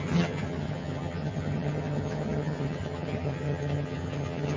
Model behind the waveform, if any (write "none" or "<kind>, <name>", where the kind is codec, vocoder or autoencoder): vocoder, HiFi-GAN